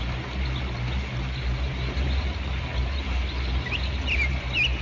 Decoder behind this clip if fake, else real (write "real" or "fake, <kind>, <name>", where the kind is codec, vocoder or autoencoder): real